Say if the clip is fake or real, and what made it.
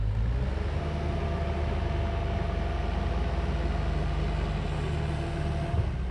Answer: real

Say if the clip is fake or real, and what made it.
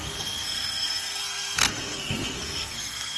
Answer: fake, codec, SNAC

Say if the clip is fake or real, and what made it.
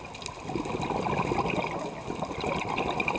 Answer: real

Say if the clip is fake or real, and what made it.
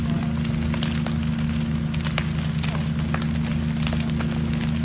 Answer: real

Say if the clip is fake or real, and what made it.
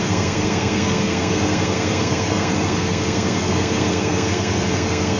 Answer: fake, codec, SNAC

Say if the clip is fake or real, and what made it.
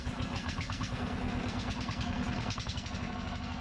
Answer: fake, codec, SNAC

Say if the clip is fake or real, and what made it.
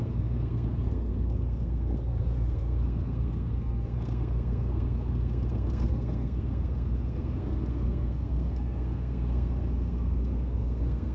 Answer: fake, codec, SNAC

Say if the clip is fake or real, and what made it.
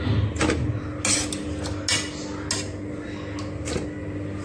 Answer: real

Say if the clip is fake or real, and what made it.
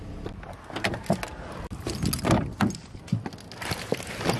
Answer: real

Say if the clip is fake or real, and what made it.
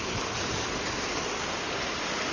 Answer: real